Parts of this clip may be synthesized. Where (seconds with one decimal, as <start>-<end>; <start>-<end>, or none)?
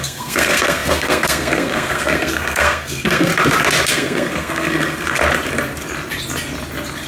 0.0-3.3; 3.9-5.2